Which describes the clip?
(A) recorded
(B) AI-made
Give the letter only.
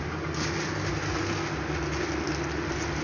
A